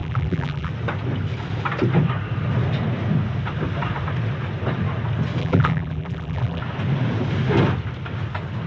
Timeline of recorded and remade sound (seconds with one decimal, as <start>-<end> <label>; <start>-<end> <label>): 0.0-0.7 remade; 0.7-5.4 recorded; 5.4-6.6 remade; 6.6-8.7 recorded

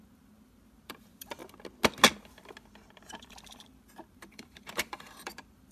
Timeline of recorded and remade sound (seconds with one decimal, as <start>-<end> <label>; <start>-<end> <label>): 0.0-1.4 remade; 1.4-3.1 recorded; 3.1-5.7 remade

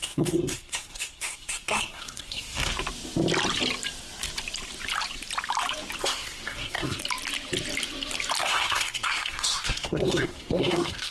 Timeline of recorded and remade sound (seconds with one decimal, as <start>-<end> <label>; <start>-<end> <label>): 0.0-2.7 remade; 2.7-6.0 recorded; 6.0-7.0 remade; 7.0-8.4 recorded; 8.4-11.1 remade

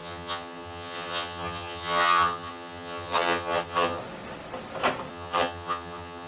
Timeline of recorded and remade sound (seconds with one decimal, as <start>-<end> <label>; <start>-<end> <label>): 0.0-4.0 remade; 4.0-5.1 recorded; 5.1-6.3 remade

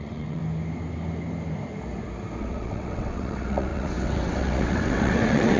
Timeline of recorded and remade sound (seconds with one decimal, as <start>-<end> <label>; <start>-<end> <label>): 0.0-0.4 remade; 0.4-2.4 recorded; 2.4-5.6 remade

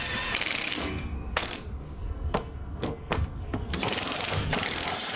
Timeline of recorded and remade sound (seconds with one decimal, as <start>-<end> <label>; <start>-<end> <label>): 0.0-0.7 recorded; 0.7-3.8 remade; 3.8-5.2 recorded

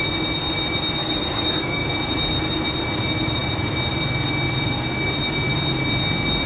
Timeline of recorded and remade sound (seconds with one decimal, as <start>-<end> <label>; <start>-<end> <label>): 0.0-1.0 recorded; 1.0-1.9 remade; 1.9-6.5 recorded

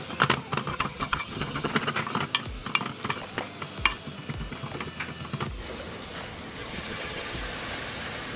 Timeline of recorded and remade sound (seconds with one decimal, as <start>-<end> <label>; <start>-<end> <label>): 0.0-0.7 recorded; 0.7-1.7 remade; 1.7-6.6 recorded; 6.6-7.4 remade; 7.4-8.4 recorded